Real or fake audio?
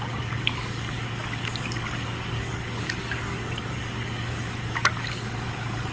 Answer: fake